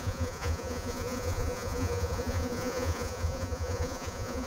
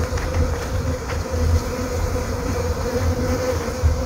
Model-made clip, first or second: first